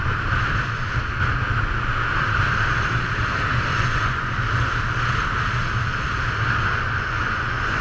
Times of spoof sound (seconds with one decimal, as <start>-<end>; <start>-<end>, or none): 3.7-4.3; 6.7-7.8